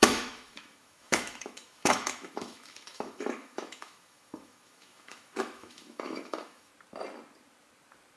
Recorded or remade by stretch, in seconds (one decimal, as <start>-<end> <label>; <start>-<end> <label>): 0.0-6.7 remade; 6.7-8.2 recorded